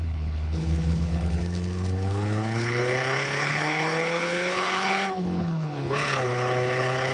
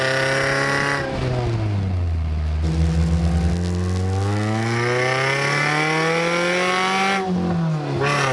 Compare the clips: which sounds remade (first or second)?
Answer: first